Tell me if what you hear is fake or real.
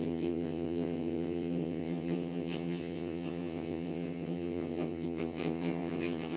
fake